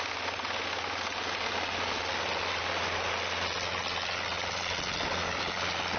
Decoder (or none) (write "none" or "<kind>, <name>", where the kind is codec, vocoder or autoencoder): none